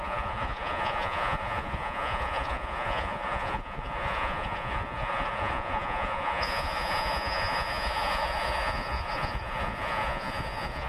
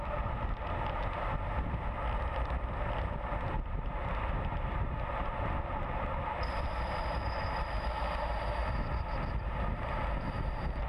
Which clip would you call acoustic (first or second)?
second